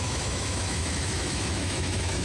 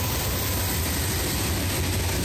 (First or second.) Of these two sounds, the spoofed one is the first